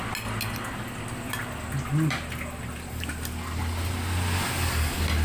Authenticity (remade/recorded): recorded